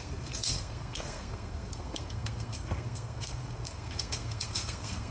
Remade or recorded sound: remade